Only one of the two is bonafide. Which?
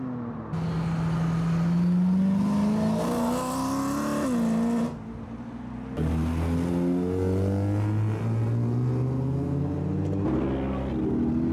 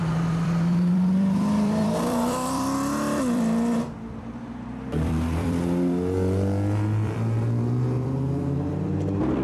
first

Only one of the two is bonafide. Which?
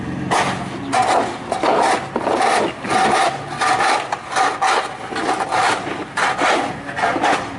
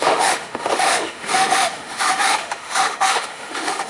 first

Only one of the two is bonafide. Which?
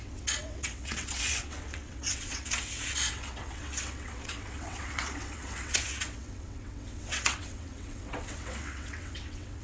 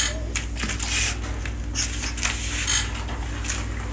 second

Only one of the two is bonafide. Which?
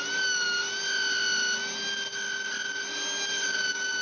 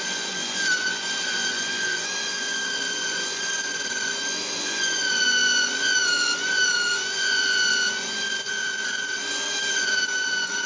first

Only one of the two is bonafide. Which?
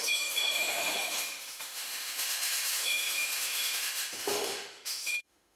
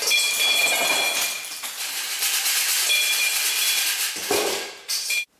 second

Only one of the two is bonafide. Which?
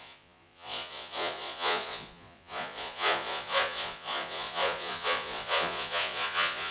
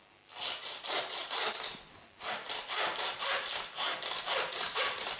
second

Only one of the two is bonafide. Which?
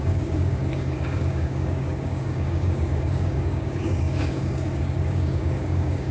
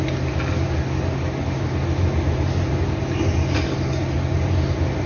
second